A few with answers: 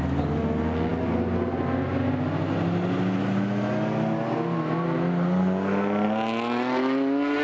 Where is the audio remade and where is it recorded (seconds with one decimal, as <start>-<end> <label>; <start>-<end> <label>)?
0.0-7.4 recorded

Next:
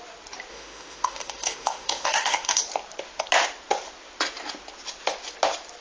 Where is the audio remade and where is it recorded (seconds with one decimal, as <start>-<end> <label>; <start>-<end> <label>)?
0.0-0.5 recorded; 0.5-2.6 remade; 2.6-5.8 recorded

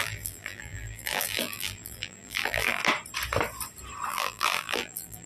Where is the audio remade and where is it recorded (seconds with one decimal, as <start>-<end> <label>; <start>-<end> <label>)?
0.0-2.8 remade; 2.8-4.1 recorded; 4.1-5.3 remade

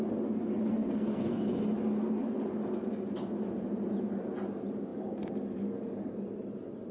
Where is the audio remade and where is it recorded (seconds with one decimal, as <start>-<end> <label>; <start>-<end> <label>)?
0.0-0.7 recorded; 0.7-1.6 remade; 1.6-6.9 recorded